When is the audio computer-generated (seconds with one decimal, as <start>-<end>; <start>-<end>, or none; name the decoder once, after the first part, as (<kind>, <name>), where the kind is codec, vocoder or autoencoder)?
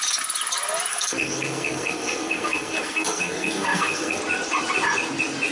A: 0.9-4.2 (codec, SNAC)